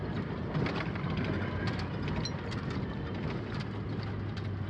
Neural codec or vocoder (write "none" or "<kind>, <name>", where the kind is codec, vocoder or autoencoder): none